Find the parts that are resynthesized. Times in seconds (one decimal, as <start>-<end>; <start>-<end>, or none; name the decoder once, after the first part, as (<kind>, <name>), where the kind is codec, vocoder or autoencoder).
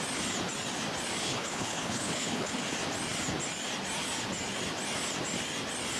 1.2-2.6 (codec, HILCodec)